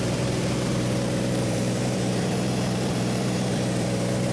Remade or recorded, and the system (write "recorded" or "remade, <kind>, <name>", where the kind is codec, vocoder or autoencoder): remade, vocoder, BigVGAN v2